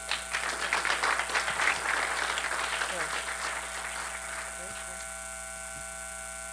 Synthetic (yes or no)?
no